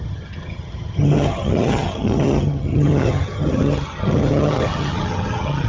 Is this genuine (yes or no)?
no